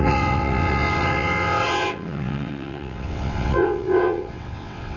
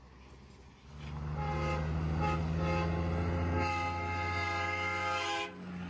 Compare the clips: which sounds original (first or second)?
second